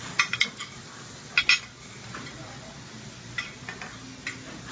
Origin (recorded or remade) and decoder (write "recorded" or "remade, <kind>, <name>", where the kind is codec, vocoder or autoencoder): recorded